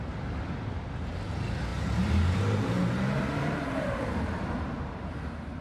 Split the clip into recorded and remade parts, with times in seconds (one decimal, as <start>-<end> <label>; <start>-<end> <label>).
0.0-1.7 recorded; 1.7-5.1 remade; 5.1-5.6 recorded